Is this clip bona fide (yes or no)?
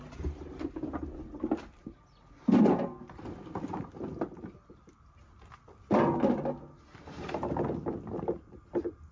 yes